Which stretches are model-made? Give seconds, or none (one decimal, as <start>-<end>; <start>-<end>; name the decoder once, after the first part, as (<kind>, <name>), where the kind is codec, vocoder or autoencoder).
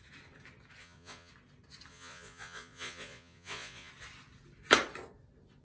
0.8-1.3 (vocoder, Vocos); 1.9-3.9